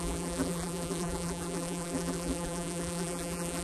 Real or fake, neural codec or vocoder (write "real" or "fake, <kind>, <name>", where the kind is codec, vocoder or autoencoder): fake, vocoder, BigVGAN v2